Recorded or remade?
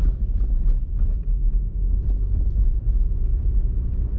recorded